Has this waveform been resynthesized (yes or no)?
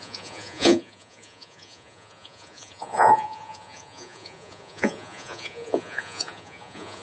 yes